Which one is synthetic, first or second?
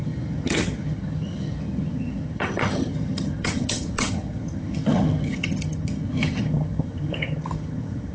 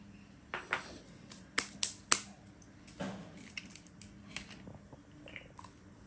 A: first